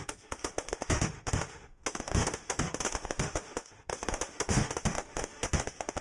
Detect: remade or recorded remade